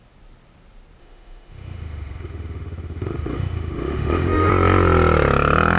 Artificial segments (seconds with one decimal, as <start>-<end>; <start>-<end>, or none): 1.0-4.5